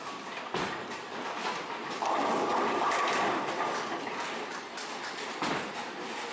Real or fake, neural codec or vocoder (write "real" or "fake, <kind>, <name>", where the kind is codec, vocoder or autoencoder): real